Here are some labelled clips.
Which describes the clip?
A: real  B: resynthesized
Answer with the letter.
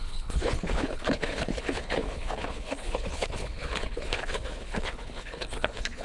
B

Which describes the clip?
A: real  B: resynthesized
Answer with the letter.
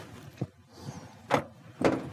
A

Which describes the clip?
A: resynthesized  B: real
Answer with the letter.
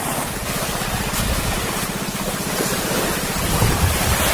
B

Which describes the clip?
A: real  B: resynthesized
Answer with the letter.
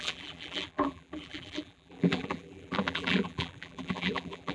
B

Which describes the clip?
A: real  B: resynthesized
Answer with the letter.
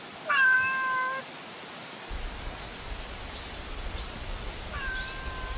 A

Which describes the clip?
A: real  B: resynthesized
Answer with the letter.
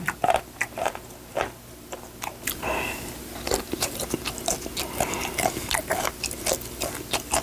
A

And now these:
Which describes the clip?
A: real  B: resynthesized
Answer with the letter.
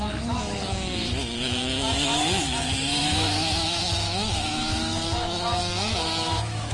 B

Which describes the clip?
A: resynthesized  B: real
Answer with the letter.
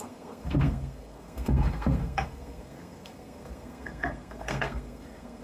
A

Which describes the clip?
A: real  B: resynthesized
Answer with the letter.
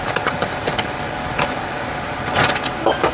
A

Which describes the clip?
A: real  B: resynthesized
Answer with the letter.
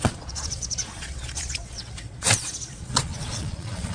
B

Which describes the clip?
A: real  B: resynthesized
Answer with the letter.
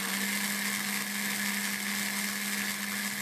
A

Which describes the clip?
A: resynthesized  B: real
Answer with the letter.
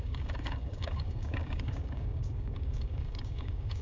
A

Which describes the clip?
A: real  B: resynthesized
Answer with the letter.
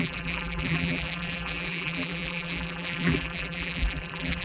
B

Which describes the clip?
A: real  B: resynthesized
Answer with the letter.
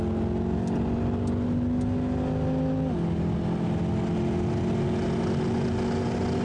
A